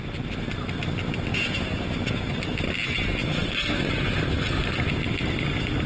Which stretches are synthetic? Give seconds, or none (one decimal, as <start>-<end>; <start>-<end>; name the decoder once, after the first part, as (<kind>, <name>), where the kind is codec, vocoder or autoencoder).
1.3-2.3 (vocoder, Vocos)